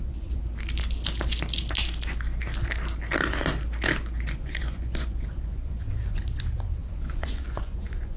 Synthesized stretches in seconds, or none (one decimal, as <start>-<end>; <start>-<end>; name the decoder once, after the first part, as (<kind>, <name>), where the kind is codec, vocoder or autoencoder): 0.0-0.4 (vocoder, Vocos); 4.3-8.2